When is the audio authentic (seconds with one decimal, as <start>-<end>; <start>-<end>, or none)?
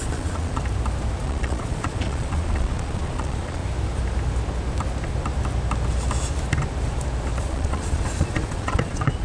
0.6-1.2; 3.6-7.4